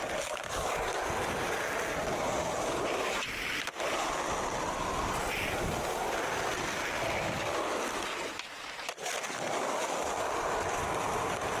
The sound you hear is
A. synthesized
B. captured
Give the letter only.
B